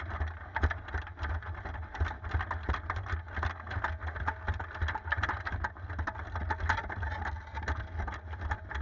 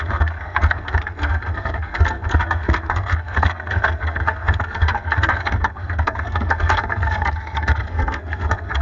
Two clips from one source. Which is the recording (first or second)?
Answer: first